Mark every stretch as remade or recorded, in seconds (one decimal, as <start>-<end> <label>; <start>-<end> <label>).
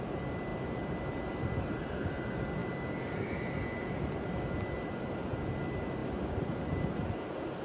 0.0-7.6 recorded